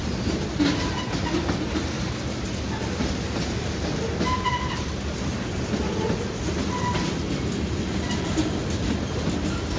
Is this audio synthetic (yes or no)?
no